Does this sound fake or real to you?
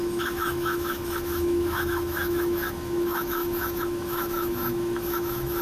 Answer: fake